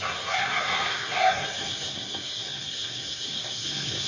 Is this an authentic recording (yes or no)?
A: no